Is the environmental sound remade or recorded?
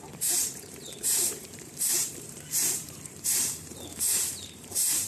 remade